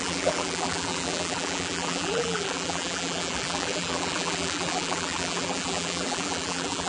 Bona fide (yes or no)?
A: no